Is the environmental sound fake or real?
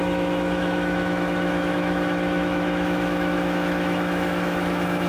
fake